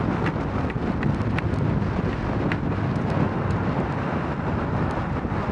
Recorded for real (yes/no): yes